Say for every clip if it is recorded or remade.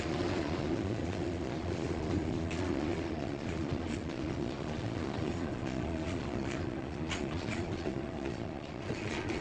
remade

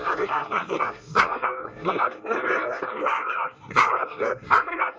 remade